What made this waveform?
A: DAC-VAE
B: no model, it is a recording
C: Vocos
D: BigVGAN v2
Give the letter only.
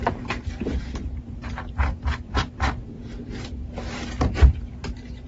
D